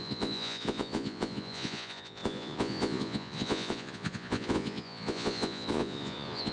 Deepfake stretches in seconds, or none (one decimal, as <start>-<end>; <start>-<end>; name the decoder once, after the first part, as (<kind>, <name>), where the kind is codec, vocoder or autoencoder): 0.0-6.5 (vocoder, Vocos)